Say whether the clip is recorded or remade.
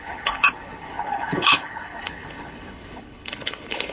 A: remade